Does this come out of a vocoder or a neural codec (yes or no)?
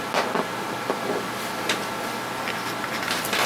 no